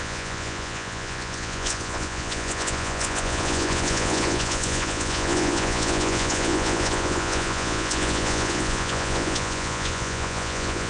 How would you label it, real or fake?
fake